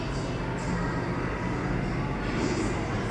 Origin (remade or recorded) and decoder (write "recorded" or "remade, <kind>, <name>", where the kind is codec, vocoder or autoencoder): remade, vocoder, BigVGAN v2